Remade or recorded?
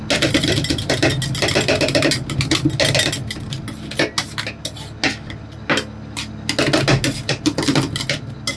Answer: recorded